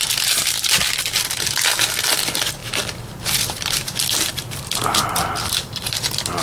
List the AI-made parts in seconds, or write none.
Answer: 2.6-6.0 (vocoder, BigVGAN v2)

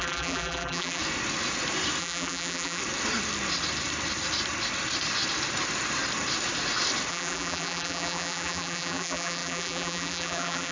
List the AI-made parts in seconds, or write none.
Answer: 0.0-1.0 (vocoder, BigVGAN v2); 2.0-2.8; 7.1-10.7

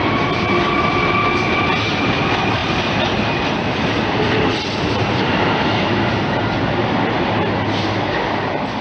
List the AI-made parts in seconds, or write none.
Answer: 2.6-6.5 (vocoder, BigVGAN v2)

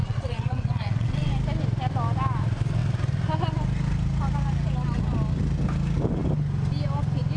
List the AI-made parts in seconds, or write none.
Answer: 0.0-1.3 (vocoder, WaveNeXt)